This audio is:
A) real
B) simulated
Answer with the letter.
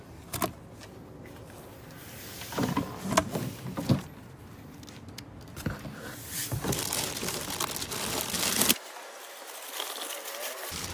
A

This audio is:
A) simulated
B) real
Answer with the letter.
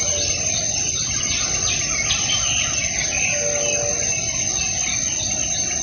B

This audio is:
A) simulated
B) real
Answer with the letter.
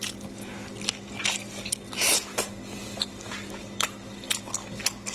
B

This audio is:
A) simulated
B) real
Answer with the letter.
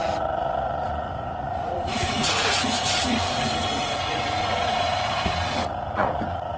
A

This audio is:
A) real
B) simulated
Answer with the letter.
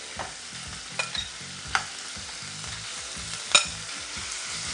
A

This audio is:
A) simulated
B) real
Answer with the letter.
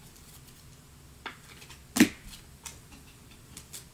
B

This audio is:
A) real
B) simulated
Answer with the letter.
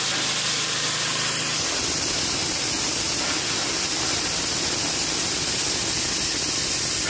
A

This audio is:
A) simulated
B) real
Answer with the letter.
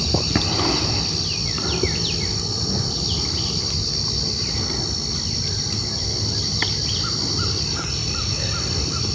B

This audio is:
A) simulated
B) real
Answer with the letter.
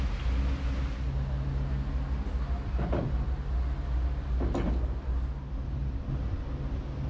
B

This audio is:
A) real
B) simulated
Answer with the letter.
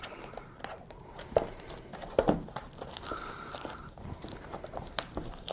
B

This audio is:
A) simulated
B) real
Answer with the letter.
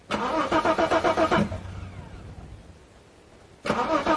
B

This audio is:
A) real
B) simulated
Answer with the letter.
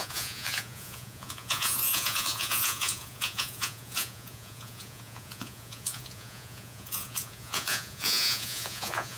B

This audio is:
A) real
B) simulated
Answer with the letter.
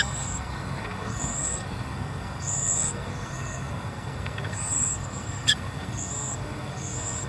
B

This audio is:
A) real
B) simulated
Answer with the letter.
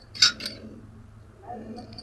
A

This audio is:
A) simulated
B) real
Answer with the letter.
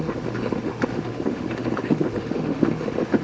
A